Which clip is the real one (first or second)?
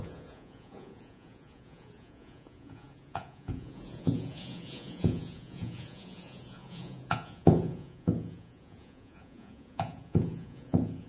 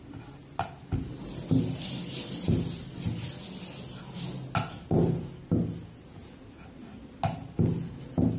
second